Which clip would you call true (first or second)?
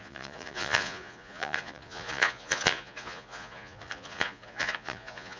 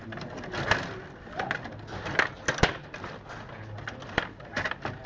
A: second